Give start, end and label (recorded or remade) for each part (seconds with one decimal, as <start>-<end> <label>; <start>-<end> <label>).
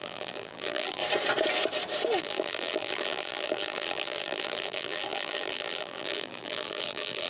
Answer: 0.0-1.0 remade; 1.0-2.2 recorded; 2.2-7.3 remade